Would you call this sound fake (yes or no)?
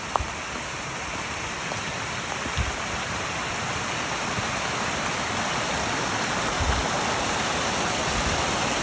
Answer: no